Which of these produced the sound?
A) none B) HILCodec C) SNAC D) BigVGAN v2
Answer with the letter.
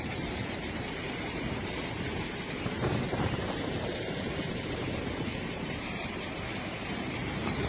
D